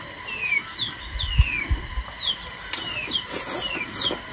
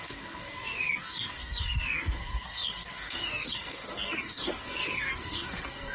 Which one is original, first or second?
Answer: first